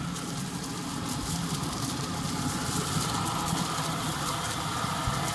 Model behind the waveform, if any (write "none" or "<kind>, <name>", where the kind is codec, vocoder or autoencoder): none